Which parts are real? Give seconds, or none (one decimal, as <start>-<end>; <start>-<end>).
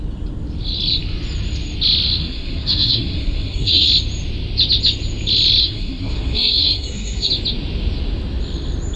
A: 0.0-2.2; 3.9-5.6; 7.3-9.0